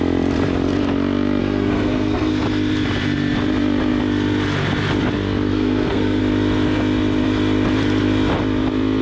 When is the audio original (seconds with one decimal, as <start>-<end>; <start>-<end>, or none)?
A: 0.0-1.4; 2.3-5.5; 6.2-9.0